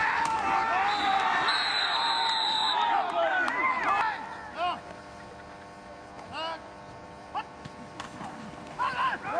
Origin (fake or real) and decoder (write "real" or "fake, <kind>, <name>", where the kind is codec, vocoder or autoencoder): real